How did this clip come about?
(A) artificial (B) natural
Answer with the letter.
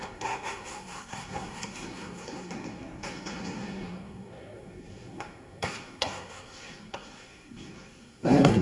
A